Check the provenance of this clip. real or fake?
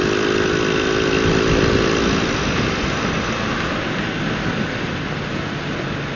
real